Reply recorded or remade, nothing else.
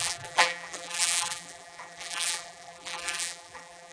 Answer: remade